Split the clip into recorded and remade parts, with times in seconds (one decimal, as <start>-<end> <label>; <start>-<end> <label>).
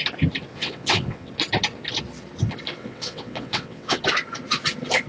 0.0-0.5 recorded; 0.5-1.3 remade; 1.3-2.8 recorded; 2.8-4.0 remade; 4.0-5.1 recorded